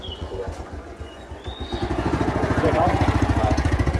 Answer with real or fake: fake